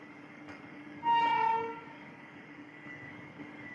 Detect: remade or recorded remade